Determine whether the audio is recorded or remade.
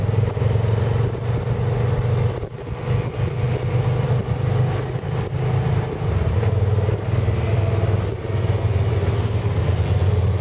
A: recorded